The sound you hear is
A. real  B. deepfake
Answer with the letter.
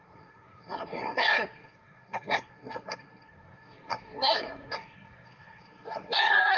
B